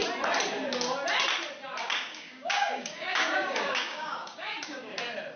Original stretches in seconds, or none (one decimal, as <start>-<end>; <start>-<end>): 0.0-1.8; 5.0-5.4